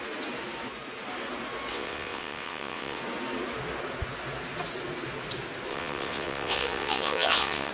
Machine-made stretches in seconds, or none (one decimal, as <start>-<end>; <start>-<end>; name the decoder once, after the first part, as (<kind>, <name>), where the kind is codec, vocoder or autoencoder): 1.7-3.0 (vocoder, WaveNeXt); 5.7-7.7